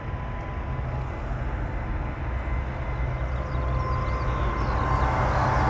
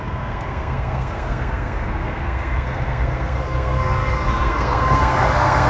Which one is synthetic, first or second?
second